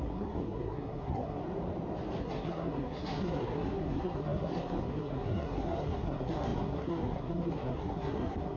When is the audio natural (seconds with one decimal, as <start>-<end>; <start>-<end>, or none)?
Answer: 1.4-2.2